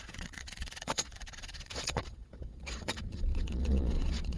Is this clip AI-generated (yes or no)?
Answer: yes